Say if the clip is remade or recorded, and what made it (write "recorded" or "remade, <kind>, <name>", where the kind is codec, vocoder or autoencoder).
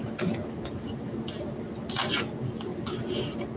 recorded